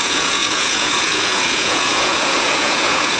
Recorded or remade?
remade